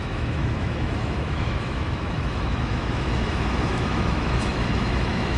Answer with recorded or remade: remade